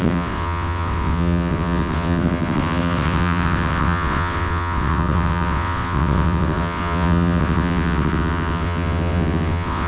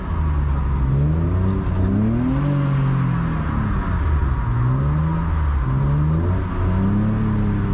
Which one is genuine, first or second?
second